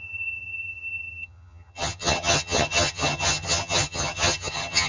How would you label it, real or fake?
fake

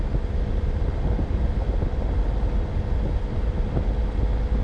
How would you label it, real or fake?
real